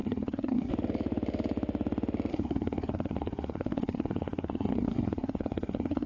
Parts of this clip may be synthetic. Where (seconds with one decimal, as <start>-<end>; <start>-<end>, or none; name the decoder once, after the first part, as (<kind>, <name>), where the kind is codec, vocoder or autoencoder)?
0.0-0.7 (codec, SNAC); 2.3-6.1